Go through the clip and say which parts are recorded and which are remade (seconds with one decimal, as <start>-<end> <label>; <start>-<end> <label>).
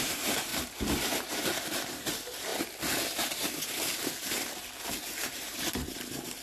0.0-0.5 remade; 0.5-1.0 recorded; 1.0-2.5 remade; 2.5-5.2 recorded; 5.2-6.4 remade